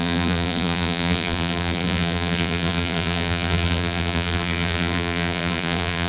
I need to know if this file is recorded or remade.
remade